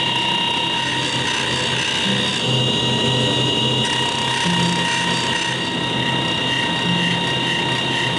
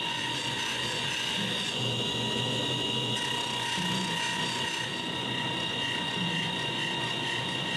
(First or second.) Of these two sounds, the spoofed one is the second